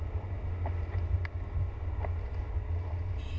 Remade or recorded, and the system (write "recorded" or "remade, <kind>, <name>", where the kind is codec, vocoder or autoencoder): recorded